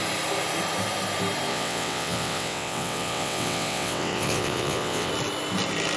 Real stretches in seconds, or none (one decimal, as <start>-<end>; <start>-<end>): 0.0-1.5; 5.1-6.0